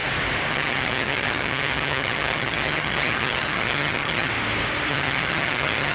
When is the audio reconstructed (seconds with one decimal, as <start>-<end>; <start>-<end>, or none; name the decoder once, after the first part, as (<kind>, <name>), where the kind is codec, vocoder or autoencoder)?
0.5-4.3 (vocoder, HiFi-GAN); 4.9-5.9